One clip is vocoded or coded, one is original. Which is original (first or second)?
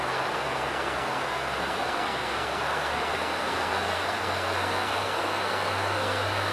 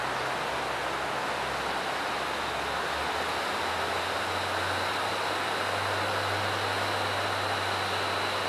second